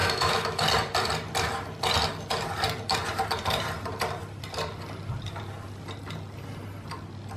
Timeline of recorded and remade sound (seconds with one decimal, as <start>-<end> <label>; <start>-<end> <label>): 0.0-0.6 remade; 0.6-7.4 recorded